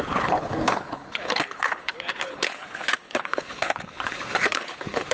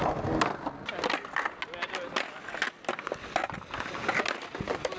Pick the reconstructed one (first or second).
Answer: first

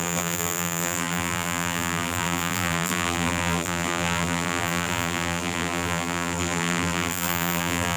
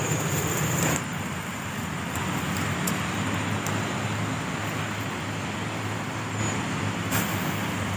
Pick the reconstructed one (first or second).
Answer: first